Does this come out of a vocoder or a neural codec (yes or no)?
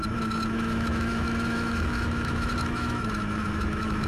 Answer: yes